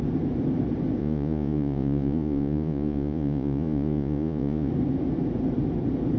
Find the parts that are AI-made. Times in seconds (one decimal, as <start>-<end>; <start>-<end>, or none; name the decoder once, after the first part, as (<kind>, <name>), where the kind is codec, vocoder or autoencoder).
1.0-4.7 (vocoder, Vocos)